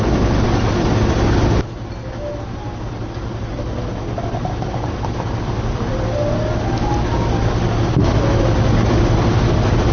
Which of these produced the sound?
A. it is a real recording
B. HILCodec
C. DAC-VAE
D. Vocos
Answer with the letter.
A